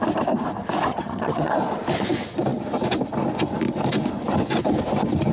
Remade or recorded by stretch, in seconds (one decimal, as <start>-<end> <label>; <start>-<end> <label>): 0.0-0.9 recorded; 0.9-1.5 remade; 1.5-5.3 recorded